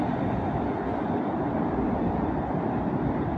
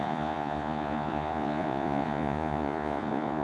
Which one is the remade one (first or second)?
second